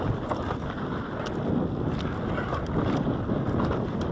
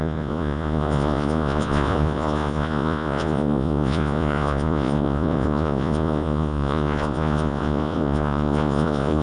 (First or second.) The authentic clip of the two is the first